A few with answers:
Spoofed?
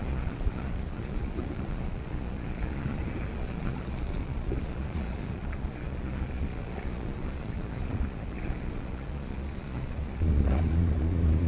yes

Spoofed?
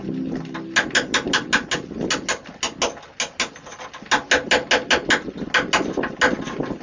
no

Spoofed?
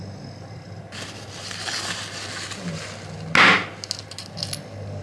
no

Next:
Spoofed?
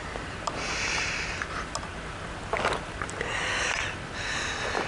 no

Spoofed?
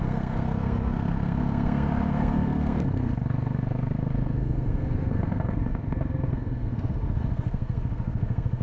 yes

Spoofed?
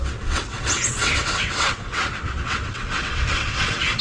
yes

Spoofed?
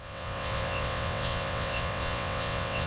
yes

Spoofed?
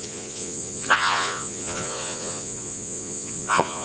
yes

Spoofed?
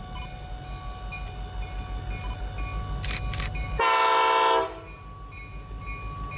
no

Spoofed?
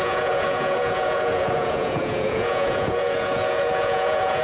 yes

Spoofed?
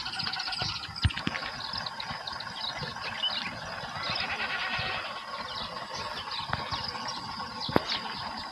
no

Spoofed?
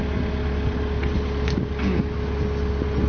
no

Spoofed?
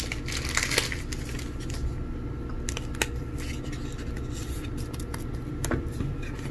no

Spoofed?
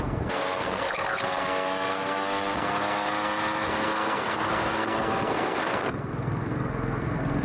yes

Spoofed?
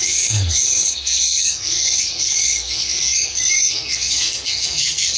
yes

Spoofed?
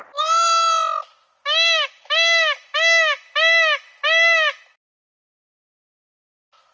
no